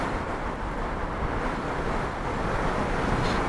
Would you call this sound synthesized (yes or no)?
no